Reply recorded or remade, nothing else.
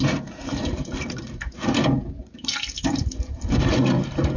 remade